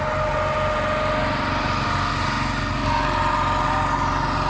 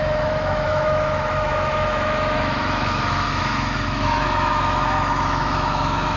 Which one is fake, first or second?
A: second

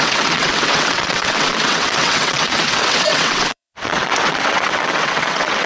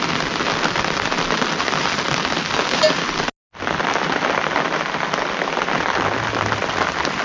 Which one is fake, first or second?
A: first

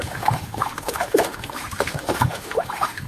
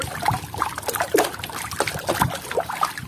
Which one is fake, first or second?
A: first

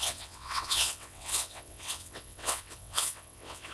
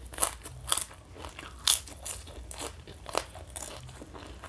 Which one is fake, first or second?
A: first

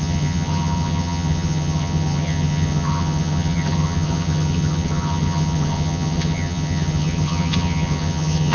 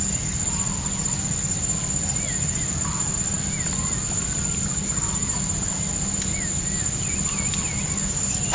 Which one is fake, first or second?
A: first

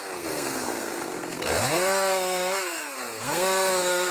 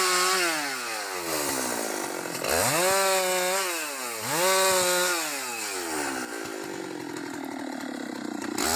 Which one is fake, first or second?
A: first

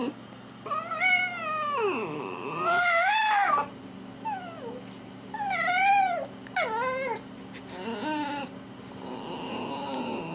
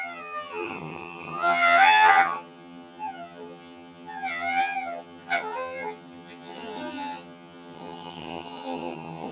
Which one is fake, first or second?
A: second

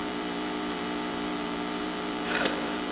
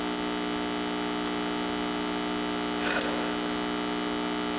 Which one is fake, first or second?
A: first